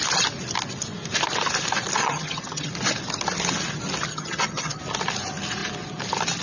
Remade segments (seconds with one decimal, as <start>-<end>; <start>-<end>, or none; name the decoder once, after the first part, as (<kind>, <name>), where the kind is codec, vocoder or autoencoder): 2.0-2.7 (vocoder, HiFi-GAN); 4.1-4.8